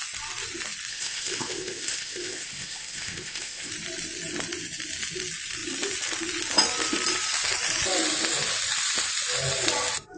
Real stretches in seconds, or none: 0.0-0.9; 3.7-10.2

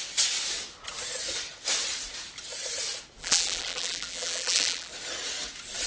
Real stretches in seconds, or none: 0.0-3.2; 4.9-5.9

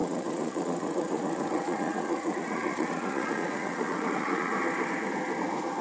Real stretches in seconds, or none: 4.5-5.8

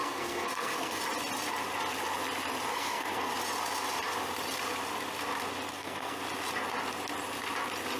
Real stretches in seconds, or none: 1.0-2.7; 3.3-5.7; 6.2-8.0

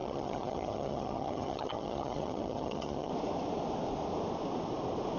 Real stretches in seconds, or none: 3.1-5.2

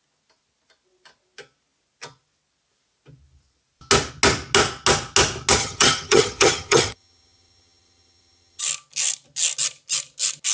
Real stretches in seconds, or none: 0.0-5.6; 8.6-10.5

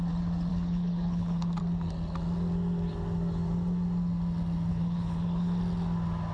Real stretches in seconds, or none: 0.0-0.5; 1.6-4.7; 5.6-6.3

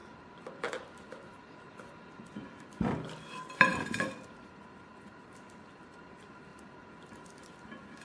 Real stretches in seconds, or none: 0.0-8.0